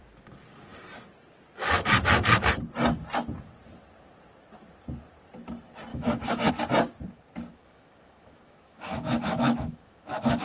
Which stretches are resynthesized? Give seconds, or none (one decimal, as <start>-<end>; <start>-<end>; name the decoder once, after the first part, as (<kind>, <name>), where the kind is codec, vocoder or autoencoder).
5.9-6.5 (autoencoder, DAC-VAE); 7.5-10.4

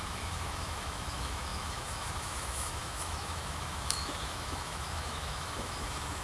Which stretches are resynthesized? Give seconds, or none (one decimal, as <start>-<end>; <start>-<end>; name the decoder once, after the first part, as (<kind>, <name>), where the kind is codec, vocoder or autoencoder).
0.0-6.2 (autoencoder, DAC-VAE)

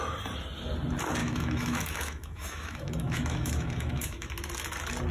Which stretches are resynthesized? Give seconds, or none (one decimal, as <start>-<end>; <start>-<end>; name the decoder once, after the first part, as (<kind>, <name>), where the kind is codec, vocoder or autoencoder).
1.2-4.3 (autoencoder, DAC-VAE)

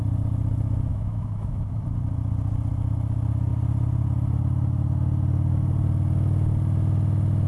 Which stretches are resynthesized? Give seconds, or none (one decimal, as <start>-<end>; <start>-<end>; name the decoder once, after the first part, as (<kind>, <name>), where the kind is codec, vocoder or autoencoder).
0.9-1.8 (autoencoder, DAC-VAE)

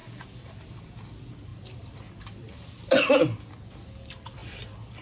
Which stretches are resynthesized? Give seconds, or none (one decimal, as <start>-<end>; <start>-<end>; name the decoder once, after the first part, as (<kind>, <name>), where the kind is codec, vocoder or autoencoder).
none

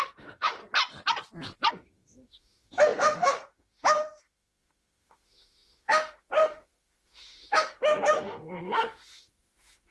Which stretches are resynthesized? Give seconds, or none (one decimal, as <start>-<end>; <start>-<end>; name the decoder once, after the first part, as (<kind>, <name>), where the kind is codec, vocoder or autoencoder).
0.0-0.6 (autoencoder, DAC-VAE); 1.7-9.9

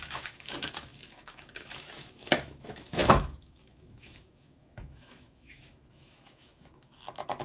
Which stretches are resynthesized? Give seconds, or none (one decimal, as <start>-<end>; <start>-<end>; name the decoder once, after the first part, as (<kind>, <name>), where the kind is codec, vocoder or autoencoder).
0.0-7.4 (autoencoder, DAC-VAE)

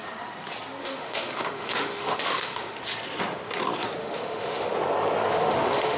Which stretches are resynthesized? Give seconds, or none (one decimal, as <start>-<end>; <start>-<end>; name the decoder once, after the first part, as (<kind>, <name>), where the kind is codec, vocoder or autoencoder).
0.8-2.8 (autoencoder, DAC-VAE); 4.0-4.7; 5.3-6.0